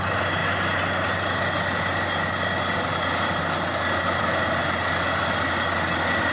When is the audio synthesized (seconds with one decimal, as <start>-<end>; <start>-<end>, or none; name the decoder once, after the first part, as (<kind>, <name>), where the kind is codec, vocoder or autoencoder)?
none

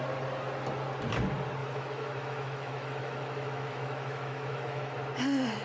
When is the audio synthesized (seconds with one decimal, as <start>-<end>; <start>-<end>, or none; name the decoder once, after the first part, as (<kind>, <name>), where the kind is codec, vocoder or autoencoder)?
1.6-5.0 (autoencoder, DAC-VAE)

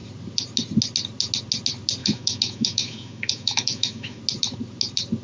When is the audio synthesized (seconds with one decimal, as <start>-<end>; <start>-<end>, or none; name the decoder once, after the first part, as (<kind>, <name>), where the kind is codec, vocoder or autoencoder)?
2.0-4.2 (autoencoder, DAC-VAE)

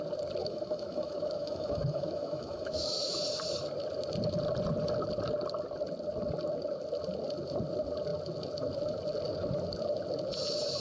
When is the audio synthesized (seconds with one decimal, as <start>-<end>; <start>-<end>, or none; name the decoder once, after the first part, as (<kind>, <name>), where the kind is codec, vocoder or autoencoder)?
0.4-3.2 (autoencoder, DAC-VAE)

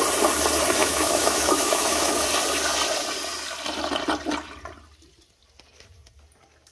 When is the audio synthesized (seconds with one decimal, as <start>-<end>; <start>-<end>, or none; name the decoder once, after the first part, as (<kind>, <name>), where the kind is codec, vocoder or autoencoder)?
0.8-2.1 (autoencoder, DAC-VAE)

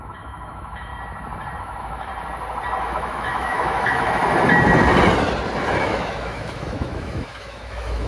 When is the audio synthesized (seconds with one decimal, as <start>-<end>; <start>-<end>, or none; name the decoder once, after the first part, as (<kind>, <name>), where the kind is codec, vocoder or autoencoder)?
0.0-0.9 (autoencoder, DAC-VAE); 1.6-2.1; 2.8-4.2; 5.8-8.1

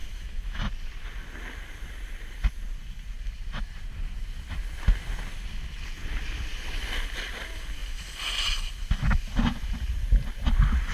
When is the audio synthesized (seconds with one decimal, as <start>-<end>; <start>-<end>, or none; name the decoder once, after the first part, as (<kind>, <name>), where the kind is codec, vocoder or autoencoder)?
0.0-0.6 (autoencoder, DAC-VAE)

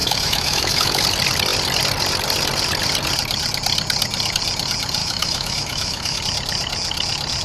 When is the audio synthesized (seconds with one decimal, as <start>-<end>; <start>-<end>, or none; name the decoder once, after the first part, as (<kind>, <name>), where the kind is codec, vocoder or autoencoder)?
0.0-1.0 (autoencoder, DAC-VAE); 5.0-6.2